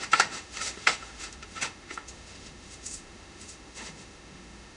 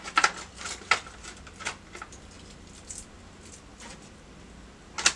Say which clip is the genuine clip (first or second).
second